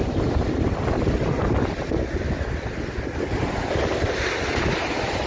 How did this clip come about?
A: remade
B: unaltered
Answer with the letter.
B